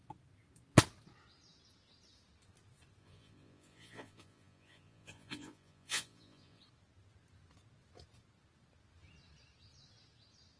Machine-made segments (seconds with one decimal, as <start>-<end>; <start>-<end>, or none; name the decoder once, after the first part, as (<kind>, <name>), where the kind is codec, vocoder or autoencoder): 3.0-6.6 (vocoder, Vocos)